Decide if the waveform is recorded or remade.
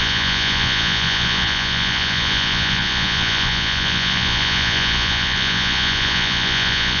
remade